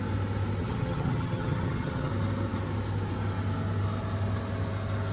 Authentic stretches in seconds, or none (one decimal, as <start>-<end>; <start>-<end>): 0.0-0.6; 2.1-5.1